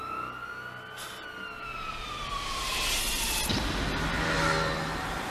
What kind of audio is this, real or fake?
real